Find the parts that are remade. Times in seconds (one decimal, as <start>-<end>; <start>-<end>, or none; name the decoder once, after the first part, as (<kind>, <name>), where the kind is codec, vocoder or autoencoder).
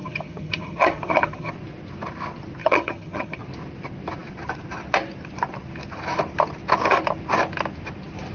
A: 0.0-1.5 (vocoder, HiFi-GAN); 2.6-3.4